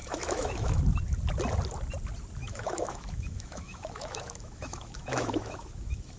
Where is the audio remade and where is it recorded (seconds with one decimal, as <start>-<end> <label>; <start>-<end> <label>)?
0.0-0.8 remade; 0.8-2.4 recorded; 2.4-6.2 remade